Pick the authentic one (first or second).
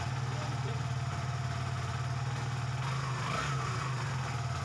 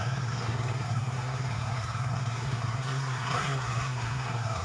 first